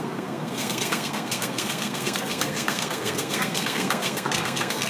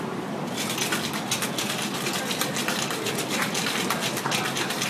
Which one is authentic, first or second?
second